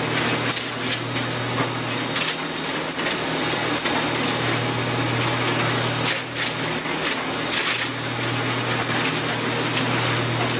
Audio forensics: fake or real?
real